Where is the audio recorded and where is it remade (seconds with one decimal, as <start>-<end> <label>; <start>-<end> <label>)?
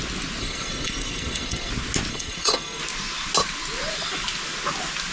0.0-0.4 recorded; 0.4-1.7 remade; 1.7-2.1 recorded; 2.1-2.8 remade; 2.8-5.1 recorded